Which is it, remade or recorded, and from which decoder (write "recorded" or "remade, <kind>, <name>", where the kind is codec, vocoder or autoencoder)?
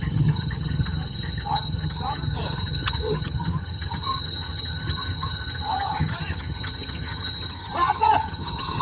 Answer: remade, vocoder, HiFi-GAN